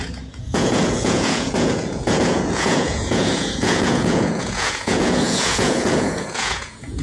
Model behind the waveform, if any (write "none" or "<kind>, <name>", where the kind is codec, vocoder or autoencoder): vocoder, Vocos